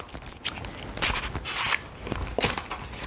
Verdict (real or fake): real